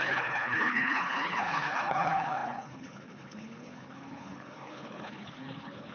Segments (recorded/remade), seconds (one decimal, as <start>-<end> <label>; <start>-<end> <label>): 0.0-5.9 remade